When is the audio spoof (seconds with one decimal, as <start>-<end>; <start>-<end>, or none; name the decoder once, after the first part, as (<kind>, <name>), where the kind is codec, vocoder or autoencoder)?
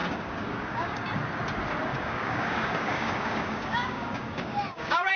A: 0.0-1.1 (codec, DAC); 1.9-5.2